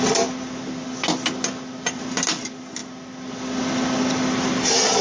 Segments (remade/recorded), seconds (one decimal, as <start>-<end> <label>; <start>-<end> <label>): 0.0-5.0 recorded